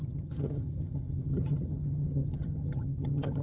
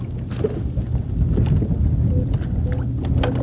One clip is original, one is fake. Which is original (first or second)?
second